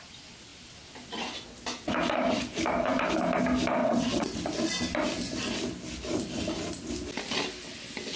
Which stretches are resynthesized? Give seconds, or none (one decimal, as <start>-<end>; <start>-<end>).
3.8-4.4